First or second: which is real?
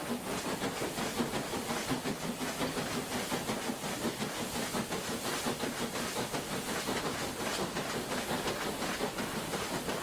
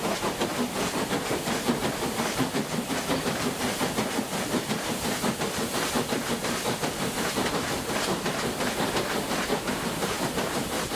first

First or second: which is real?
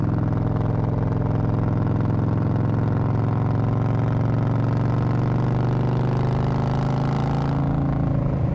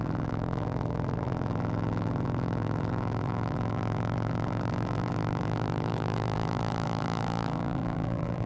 first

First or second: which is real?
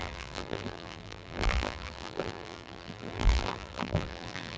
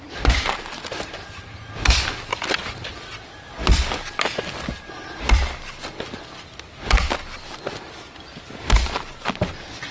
second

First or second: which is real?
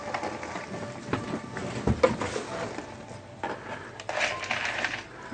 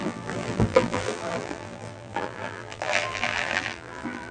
first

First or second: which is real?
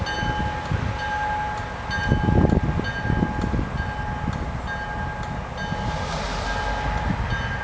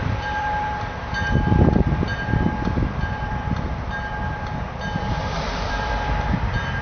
first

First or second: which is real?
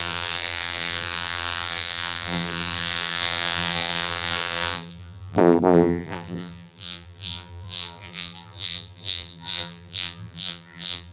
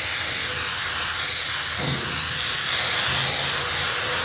second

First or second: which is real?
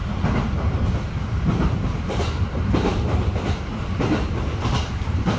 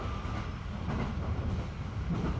second